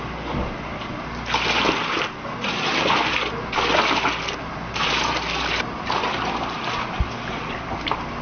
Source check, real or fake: real